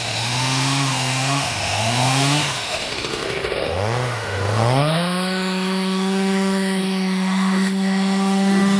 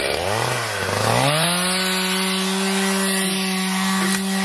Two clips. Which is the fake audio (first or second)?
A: first